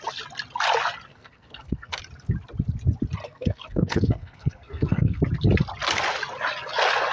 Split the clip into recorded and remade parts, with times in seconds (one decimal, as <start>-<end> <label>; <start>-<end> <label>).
0.0-1.1 recorded; 1.1-2.0 remade; 2.0-3.2 recorded; 3.2-5.2 remade; 5.2-7.1 recorded